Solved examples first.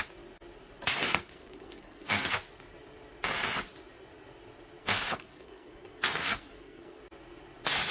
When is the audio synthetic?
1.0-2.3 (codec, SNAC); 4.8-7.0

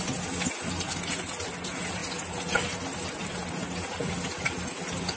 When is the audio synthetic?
none

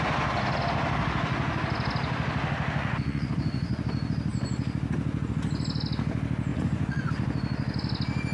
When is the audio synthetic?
2.8-3.8 (vocoder, Vocos); 6.5-7.1

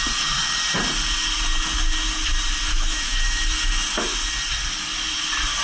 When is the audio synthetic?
2.7-3.4 (autoencoder, DAC-VAE)

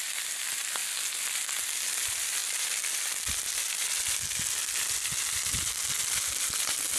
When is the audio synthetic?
0.0-0.8 (vocoder, BigVGAN v2); 1.6-2.4; 6.2-7.0

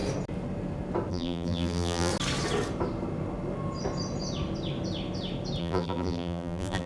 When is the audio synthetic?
1.1-2.1 (vocoder, BigVGAN v2); 5.6-6.9

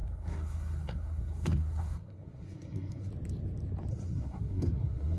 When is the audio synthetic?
0.0-3.1 (codec, SNAC); 3.9-5.2

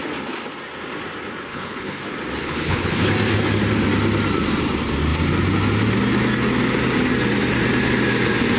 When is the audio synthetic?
1.5-2.0 (codec, HILCodec); 2.4-3.1